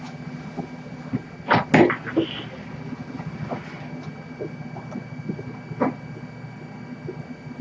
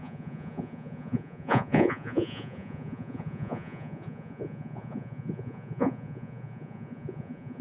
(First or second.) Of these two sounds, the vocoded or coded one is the second